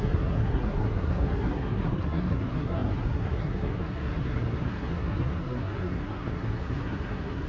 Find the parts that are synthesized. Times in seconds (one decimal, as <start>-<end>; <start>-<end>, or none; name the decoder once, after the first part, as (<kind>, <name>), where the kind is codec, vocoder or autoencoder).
0.0-7.5 (codec, SNAC)